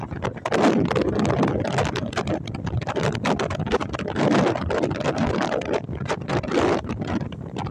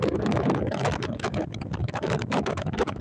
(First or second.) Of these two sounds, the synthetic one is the second